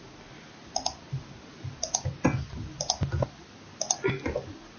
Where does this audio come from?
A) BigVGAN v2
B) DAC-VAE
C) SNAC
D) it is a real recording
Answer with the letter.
D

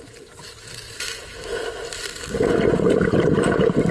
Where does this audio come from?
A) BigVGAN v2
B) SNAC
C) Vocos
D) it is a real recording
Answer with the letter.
D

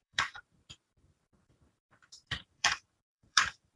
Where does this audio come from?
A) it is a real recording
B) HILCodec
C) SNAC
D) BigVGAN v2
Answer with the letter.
D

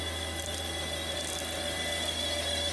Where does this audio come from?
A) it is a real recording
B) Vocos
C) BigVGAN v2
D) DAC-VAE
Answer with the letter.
A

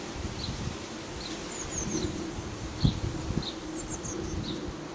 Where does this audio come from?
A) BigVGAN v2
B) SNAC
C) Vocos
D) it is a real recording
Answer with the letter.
D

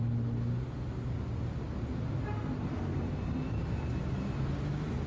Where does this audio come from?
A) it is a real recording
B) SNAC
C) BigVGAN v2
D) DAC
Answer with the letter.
A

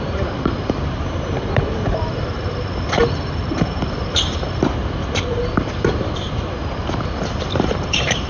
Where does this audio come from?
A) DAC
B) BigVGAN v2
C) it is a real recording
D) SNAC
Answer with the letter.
B